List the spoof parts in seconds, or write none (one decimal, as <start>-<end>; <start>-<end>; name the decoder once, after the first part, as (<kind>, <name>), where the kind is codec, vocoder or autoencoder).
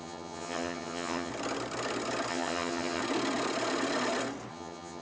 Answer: 0.0-1.3 (vocoder, HiFi-GAN); 2.3-3.0; 4.5-5.0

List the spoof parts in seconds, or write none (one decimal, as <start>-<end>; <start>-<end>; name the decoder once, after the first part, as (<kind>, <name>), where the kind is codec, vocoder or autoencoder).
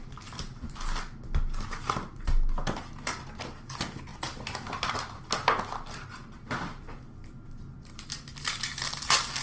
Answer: none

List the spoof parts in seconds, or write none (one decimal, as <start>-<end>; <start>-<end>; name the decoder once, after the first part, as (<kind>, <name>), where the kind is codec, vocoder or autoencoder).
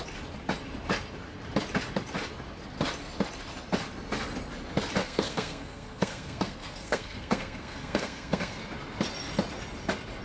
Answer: 5.0-8.6 (codec, SNAC)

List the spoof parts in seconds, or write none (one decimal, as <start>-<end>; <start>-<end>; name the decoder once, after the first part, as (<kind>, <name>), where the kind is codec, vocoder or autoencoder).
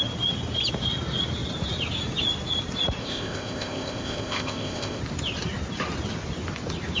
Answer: 3.0-5.0 (codec, ZipCodec)